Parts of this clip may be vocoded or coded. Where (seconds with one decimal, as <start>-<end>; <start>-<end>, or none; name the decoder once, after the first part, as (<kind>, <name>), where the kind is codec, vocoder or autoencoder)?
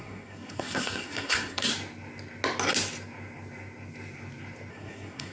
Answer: 0.0-1.7 (codec, SNAC); 4.7-5.3